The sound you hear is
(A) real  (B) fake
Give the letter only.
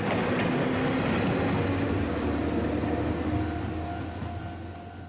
A